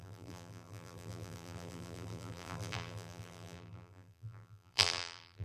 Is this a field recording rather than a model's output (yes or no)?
no